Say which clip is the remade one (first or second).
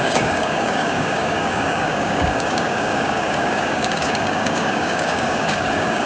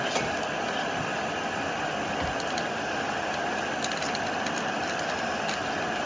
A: first